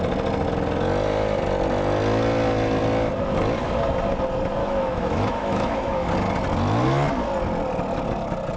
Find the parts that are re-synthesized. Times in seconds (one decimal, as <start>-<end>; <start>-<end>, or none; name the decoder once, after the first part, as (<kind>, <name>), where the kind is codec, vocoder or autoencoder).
4.6-6.1 (autoencoder, DAC-VAE)